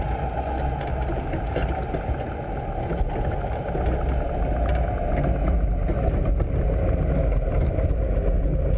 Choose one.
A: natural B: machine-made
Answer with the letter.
A